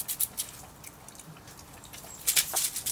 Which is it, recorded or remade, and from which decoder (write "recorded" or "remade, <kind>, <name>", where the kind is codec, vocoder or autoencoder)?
recorded